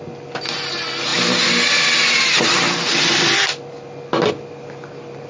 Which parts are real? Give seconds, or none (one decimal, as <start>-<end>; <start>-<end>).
0.0-5.3